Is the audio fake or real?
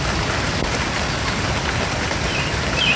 real